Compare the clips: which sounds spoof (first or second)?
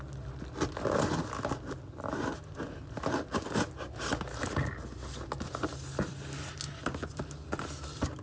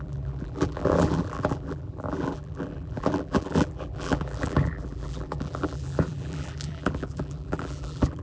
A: second